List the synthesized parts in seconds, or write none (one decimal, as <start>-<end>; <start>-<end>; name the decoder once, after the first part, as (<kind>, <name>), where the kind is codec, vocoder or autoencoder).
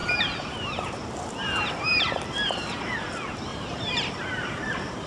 0.0-0.9 (vocoder, BigVGAN v2); 1.9-2.8; 3.5-5.1